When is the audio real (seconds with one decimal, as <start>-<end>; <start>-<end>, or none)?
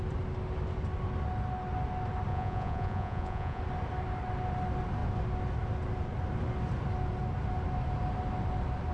0.0-2.3; 3.6-8.9